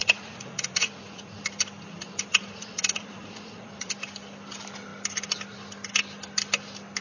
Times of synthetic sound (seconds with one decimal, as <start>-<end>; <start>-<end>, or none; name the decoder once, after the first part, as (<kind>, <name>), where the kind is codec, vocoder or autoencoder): 0.0-1.4 (vocoder, Vocos); 2.3-3.9